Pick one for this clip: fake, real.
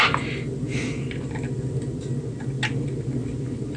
real